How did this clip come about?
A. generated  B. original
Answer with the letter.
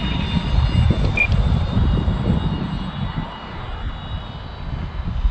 B